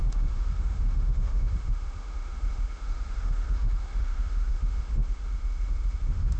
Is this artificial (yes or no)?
yes